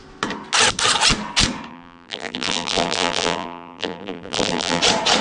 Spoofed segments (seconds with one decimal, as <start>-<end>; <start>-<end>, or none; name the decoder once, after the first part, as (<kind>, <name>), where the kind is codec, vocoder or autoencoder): 1.7-4.8 (vocoder, BigVGAN v2)

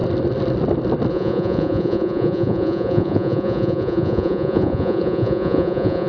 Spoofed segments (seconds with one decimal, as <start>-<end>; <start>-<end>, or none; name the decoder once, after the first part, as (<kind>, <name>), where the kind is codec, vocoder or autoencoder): 1.1-6.1 (vocoder, Vocos)

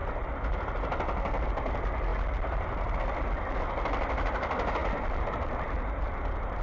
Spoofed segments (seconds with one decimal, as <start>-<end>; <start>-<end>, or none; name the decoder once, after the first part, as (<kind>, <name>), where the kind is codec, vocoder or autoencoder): none

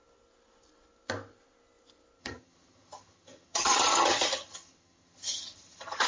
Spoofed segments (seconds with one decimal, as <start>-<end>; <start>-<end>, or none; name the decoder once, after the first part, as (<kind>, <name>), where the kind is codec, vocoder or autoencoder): 2.2-6.1 (vocoder, HiFi-GAN)

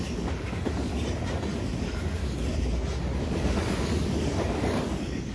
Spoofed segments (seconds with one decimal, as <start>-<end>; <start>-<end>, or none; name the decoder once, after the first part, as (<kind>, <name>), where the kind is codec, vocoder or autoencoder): 0.0-0.9 (codec, DAC); 1.8-2.2; 3.2-5.3

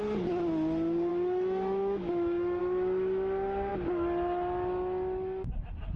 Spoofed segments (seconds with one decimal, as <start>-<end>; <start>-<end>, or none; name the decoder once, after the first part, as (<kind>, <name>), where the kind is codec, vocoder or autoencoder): 1.1-2.6 (autoencoder, DAC-VAE)

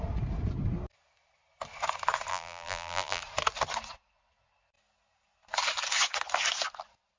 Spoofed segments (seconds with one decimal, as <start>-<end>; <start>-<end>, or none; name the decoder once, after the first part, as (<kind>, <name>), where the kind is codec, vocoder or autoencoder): 2.3-3.2 (vocoder, BigVGAN v2)